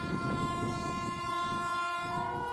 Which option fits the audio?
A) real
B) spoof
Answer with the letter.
B